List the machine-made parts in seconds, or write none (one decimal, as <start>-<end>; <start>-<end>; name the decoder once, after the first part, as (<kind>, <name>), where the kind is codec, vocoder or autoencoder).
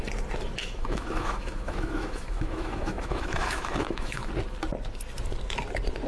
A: 0.6-4.3 (autoencoder, DAC-VAE)